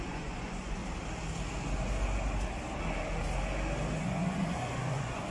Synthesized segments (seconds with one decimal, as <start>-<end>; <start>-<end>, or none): 0.0-0.8; 4.0-5.3